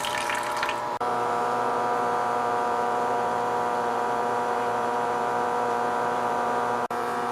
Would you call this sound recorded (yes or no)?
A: no